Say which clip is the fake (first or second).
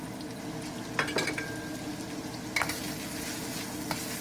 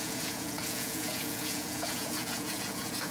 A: second